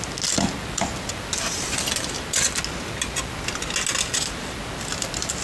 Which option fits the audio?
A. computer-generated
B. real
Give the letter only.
B